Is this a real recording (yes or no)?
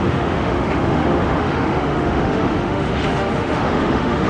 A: no